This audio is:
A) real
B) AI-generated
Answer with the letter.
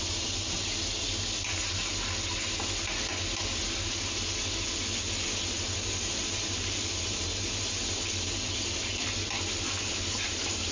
A